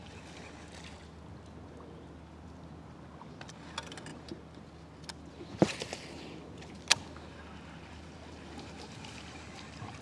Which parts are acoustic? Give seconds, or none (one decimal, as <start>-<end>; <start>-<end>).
0.0-10.0